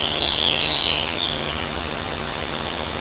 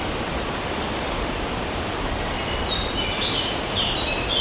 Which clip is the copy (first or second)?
first